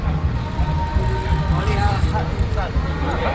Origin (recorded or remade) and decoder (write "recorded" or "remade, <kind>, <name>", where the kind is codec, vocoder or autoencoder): recorded